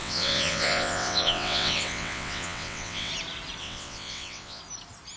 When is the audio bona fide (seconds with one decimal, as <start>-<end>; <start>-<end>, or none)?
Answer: 3.1-3.6; 4.6-5.2